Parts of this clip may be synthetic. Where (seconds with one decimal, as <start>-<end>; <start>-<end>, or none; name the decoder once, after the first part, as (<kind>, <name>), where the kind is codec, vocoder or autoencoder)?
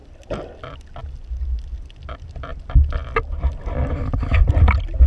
none